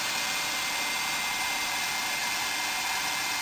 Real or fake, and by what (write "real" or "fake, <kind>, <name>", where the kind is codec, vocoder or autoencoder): fake, vocoder, BigVGAN v2